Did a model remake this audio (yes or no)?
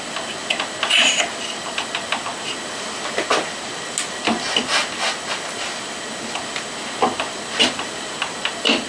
no